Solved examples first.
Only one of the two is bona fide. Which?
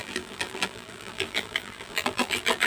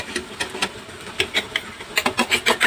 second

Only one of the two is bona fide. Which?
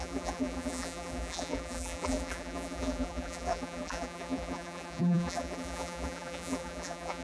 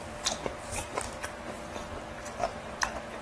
second